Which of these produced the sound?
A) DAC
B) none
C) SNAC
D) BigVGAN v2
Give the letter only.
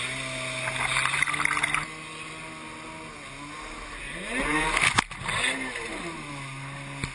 B